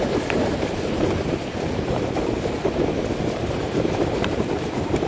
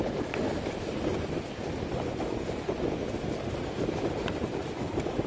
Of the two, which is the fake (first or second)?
first